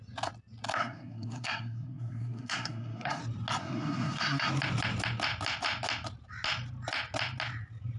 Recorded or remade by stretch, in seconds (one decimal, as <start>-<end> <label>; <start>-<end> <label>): 0.0-0.8 recorded; 0.8-3.2 remade; 3.2-3.6 recorded; 3.6-4.5 remade; 4.5-8.0 recorded